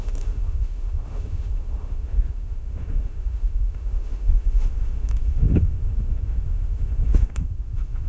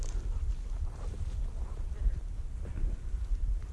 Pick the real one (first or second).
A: second